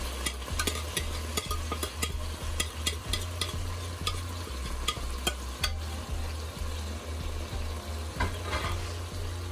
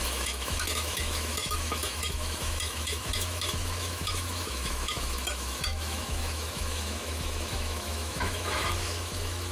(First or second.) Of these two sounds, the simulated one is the second